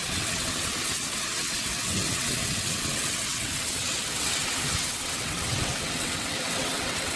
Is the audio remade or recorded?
remade